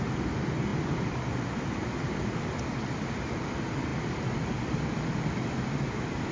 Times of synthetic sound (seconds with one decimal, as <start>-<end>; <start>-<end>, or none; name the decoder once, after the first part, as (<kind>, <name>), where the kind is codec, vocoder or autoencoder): none